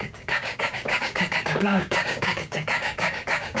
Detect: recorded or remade remade